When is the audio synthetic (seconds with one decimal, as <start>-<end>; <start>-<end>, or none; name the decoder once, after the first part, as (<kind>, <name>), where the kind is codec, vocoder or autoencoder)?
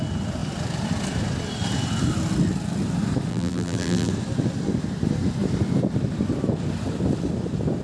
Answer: 3.3-4.1 (vocoder, BigVGAN v2)